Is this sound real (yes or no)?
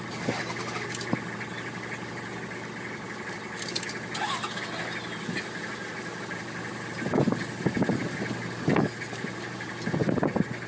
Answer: yes